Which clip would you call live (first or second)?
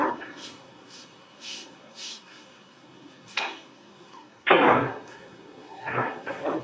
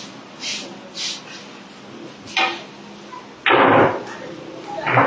second